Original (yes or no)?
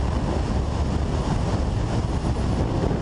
yes